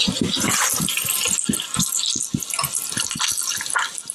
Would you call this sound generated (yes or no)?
no